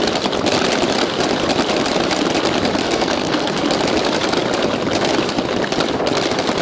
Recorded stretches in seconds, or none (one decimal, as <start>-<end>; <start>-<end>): 0.0-2.8; 3.6-6.6